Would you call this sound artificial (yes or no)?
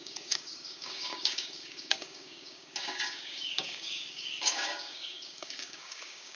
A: yes